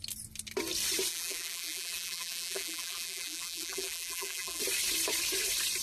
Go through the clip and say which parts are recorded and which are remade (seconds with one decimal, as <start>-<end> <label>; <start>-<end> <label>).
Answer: 0.0-1.1 recorded; 1.1-4.6 remade; 4.6-5.8 recorded